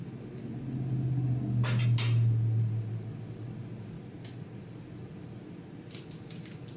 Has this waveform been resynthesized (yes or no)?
no